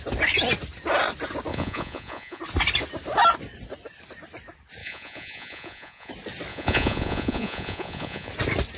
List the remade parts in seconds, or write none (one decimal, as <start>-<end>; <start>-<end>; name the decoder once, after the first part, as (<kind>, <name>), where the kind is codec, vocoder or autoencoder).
1.5-2.4 (vocoder, Vocos); 4.8-6.1; 6.5-8.3